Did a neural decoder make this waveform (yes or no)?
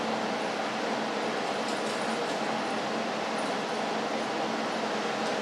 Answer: no